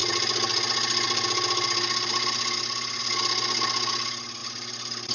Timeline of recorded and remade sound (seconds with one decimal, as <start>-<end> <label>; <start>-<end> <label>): 0.0-4.4 recorded; 4.4-5.1 remade